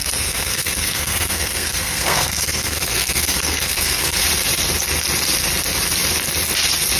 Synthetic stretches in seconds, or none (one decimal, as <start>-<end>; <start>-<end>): 0.0-4.2